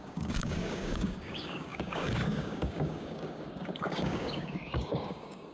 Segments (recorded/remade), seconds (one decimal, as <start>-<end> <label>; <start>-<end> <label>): 0.0-5.5 remade